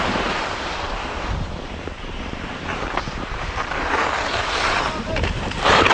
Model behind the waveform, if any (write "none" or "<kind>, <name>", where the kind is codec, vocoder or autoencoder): vocoder, BigVGAN v2